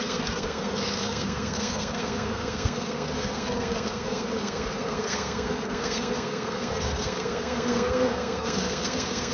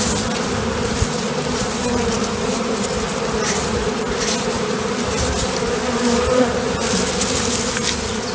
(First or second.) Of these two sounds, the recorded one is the second